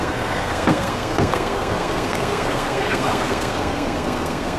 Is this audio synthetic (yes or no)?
yes